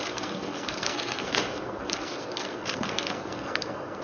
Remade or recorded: remade